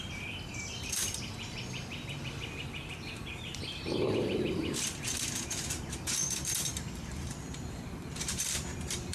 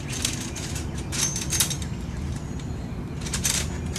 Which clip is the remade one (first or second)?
first